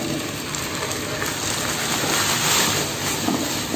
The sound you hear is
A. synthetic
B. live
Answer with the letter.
B